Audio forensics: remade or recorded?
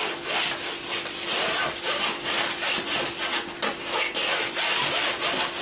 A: recorded